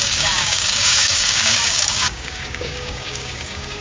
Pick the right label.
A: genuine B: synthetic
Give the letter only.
B